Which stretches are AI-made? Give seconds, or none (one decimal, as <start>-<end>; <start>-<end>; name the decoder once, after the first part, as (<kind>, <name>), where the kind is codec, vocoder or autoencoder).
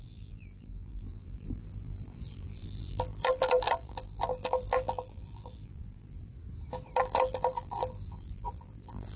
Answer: 0.0-6.3 (vocoder, BigVGAN v2); 7.0-9.2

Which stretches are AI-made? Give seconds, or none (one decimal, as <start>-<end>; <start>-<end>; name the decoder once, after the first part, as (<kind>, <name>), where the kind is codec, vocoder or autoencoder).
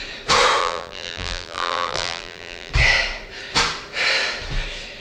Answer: 0.6-2.7 (vocoder, BigVGAN v2)